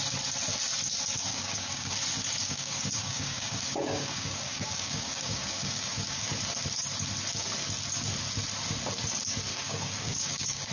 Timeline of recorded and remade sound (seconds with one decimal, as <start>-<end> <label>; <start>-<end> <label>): 0.0-1.3 recorded; 1.3-1.9 remade; 1.9-2.4 recorded; 2.4-6.3 remade; 6.3-9.5 recorded; 9.5-10.7 remade